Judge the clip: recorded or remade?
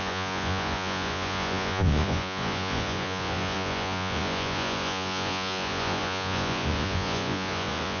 remade